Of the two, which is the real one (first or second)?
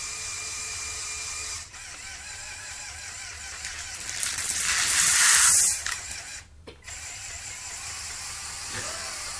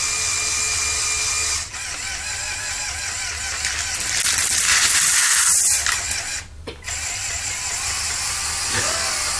second